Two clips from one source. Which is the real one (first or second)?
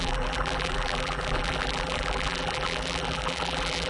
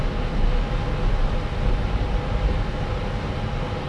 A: second